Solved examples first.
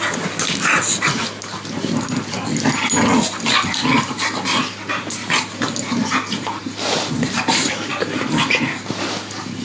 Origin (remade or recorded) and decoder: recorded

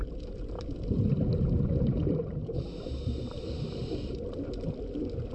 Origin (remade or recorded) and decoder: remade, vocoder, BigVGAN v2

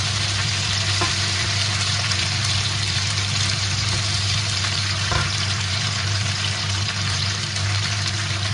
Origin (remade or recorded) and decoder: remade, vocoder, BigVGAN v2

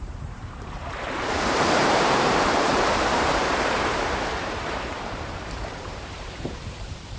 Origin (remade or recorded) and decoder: remade, vocoder, BigVGAN v2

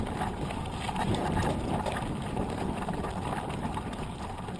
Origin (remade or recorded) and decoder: recorded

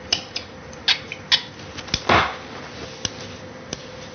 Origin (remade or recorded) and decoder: recorded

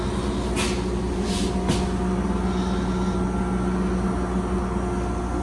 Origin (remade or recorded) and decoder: recorded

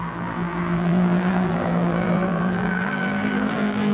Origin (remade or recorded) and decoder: remade, vocoder, BigVGAN v2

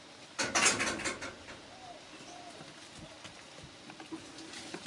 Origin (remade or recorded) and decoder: recorded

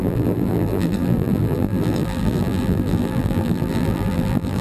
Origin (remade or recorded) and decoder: remade, vocoder, BigVGAN v2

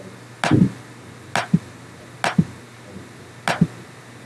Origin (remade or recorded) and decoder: recorded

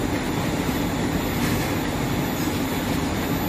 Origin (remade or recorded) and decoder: recorded